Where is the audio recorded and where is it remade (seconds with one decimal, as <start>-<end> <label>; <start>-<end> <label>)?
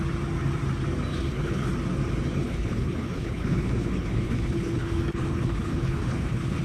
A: 0.0-1.1 recorded; 1.1-1.7 remade; 1.7-2.4 recorded; 2.4-6.6 remade